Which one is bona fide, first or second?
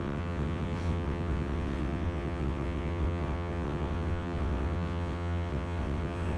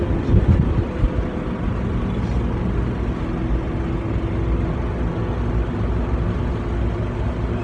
second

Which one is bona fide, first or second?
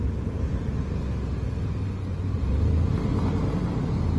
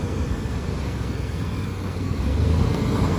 first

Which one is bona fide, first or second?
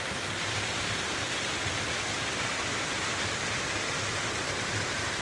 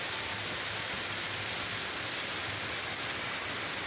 second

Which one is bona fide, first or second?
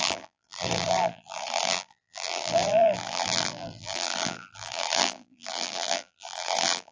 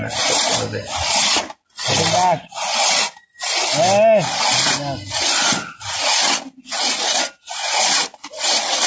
second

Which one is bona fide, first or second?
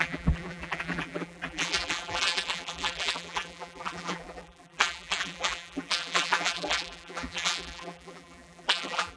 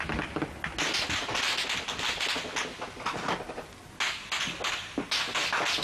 second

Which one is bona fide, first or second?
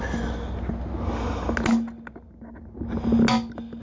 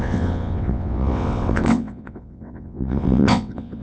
first